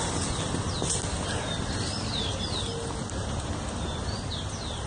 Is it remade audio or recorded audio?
recorded